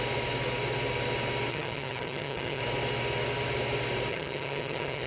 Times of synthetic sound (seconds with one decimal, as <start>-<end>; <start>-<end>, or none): 1.5-2.6; 4.1-5.1